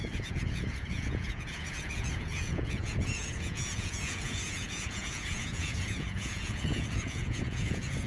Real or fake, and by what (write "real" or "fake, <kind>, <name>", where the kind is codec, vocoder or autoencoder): fake, vocoder, Vocos